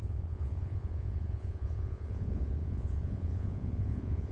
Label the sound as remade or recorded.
remade